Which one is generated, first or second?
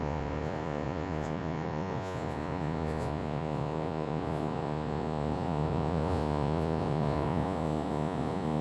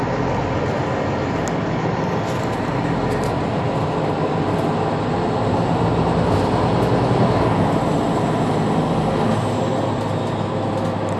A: first